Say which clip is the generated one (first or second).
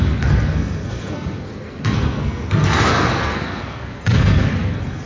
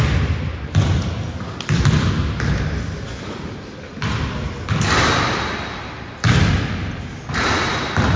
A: first